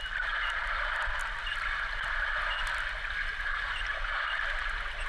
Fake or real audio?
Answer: real